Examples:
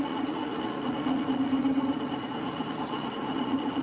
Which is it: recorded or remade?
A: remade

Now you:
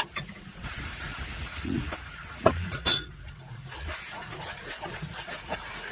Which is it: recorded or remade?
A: remade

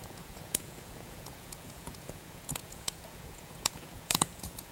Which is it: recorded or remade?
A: remade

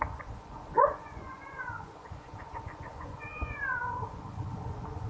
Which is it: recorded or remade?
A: remade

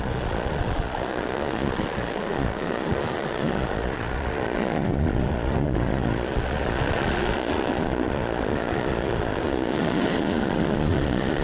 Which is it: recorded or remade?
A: remade